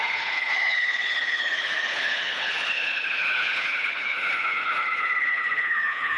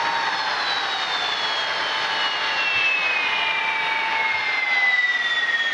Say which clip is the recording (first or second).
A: second